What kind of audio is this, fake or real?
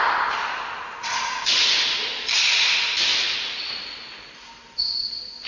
real